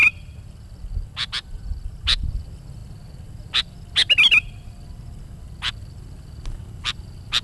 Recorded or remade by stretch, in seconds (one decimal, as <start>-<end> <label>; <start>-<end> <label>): 0.0-7.4 recorded